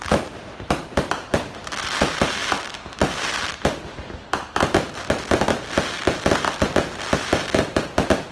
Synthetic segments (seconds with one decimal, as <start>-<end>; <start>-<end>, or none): none

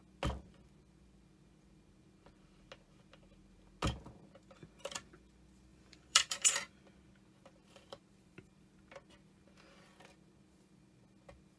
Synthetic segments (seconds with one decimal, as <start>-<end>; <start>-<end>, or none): 5.7-6.7; 7.6-8.4